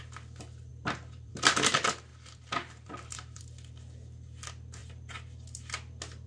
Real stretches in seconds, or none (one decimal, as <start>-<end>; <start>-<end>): 0.0-0.7; 1.3-2.1; 3.4-6.3